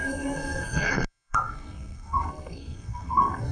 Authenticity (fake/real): fake